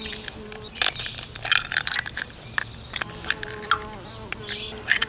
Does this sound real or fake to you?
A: real